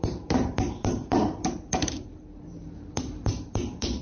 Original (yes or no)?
no